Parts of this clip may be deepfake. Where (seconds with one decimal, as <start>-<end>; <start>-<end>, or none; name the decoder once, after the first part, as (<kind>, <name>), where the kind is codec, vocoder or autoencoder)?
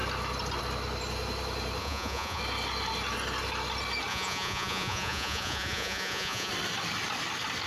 1.8-2.4 (vocoder, Vocos); 4.1-6.5